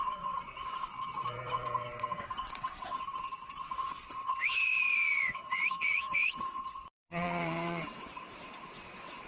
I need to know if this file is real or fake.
fake